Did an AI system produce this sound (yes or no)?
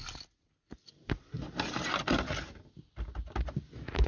no